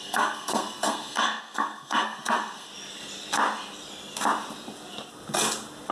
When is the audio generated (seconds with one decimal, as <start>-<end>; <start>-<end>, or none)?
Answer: 0.0-2.7